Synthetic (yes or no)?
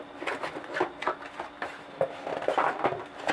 no